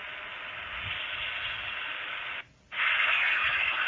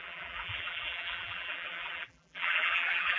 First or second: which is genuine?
first